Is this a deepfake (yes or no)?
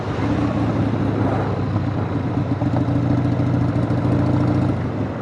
no